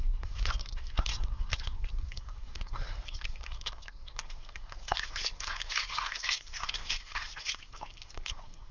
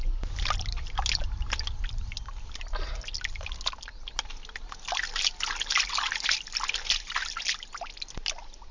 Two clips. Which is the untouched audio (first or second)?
second